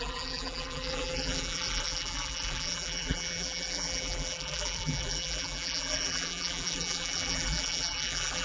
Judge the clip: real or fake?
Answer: fake